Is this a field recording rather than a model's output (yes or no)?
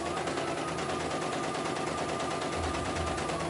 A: yes